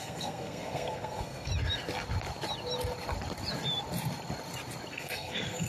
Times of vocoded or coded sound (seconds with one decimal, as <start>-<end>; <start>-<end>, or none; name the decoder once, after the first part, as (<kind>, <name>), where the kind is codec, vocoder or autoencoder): 0.0-1.5 (codec, SNAC); 4.9-5.7